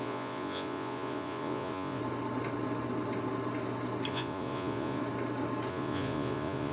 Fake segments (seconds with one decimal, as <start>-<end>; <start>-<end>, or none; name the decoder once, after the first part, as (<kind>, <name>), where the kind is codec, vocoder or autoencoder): 0.0-2.0 (vocoder, Vocos); 4.1-5.0; 5.7-6.7